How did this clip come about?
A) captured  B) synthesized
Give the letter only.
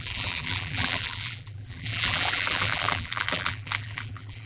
B